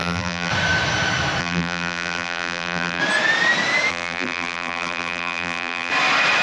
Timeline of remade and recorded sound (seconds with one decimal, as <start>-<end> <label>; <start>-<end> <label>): 0.0-0.5 remade; 0.5-1.4 recorded; 1.4-3.0 remade; 3.0-3.9 recorded; 3.9-5.9 remade; 5.9-6.4 recorded